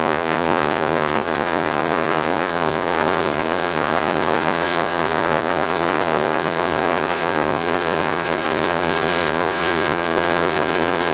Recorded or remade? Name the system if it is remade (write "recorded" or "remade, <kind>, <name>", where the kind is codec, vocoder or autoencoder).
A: remade, vocoder, Vocos